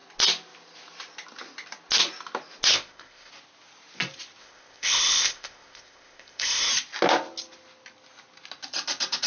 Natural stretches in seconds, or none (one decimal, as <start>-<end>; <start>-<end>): 0.0-2.7; 3.3-4.4; 6.7-9.3